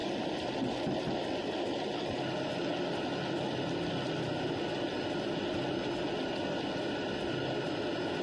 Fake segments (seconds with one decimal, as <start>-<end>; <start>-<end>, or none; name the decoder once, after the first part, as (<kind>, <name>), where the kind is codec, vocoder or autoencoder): 0.0-1.8 (vocoder, BigVGAN v2)